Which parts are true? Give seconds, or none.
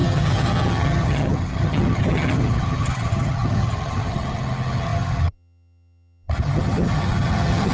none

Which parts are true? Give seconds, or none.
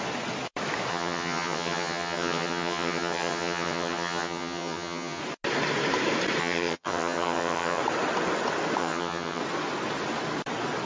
0.0-0.9; 5.2-6.4; 7.8-8.8; 9.4-10.9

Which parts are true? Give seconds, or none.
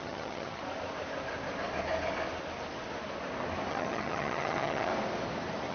0.6-3.7; 4.9-5.7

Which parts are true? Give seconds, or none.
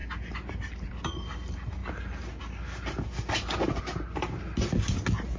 0.0-5.4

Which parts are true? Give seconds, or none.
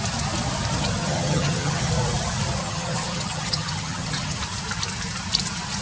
0.0-1.0; 1.9-2.6; 4.4-5.8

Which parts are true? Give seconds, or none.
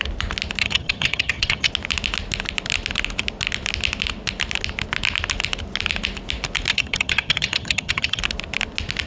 0.0-0.6; 1.7-6.7; 8.2-9.1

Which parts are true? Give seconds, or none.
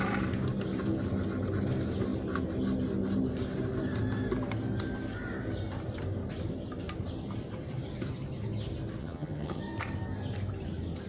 0.0-9.0; 9.6-11.1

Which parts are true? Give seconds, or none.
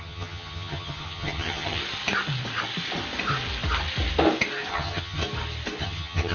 1.8-4.7; 5.2-5.8